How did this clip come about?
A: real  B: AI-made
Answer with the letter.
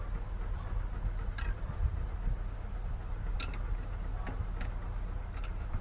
A